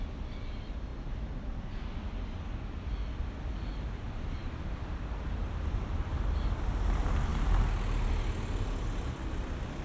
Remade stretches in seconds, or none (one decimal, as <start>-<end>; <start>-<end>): none

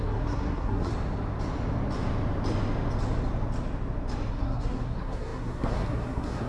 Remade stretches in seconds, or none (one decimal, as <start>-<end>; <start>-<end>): 0.0-0.9; 4.3-6.5

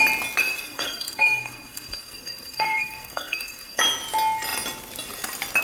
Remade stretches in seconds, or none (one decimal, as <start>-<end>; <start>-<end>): 0.4-3.8

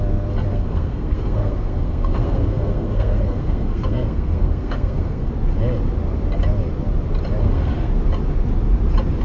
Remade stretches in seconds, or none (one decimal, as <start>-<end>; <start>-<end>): 0.5-5.3; 7.4-7.9

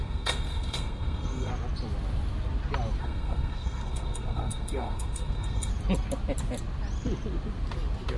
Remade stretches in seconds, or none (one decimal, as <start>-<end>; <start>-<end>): 0.0-1.5; 3.0-5.7

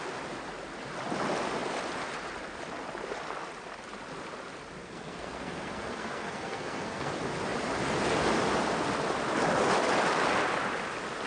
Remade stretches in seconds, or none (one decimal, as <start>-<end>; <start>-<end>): 4.8-7.1

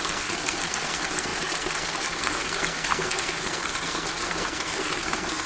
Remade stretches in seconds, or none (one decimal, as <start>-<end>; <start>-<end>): 0.0-5.5

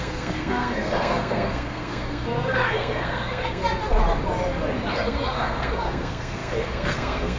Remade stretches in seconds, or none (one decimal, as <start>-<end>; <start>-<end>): 0.0-3.6; 4.9-7.4